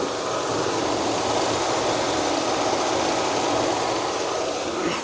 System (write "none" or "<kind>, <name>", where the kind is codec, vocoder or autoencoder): none